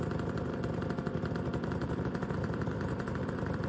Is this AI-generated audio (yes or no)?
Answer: yes